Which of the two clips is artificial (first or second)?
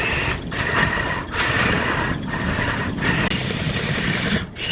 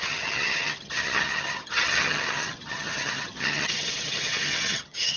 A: second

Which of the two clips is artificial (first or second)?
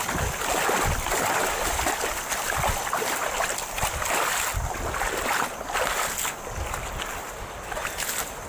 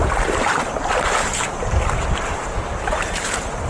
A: second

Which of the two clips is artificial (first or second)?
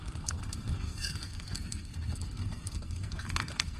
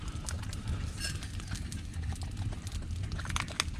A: first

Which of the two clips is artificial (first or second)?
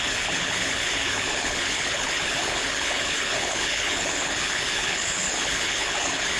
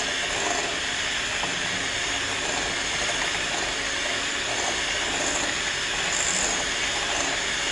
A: first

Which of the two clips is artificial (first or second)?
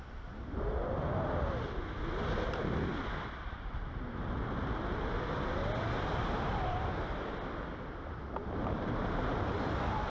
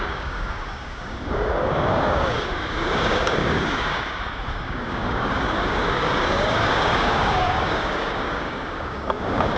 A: second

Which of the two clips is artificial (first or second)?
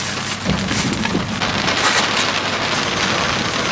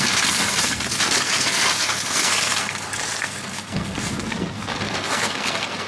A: second